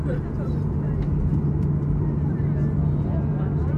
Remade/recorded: recorded